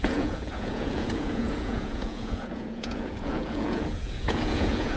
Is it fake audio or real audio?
fake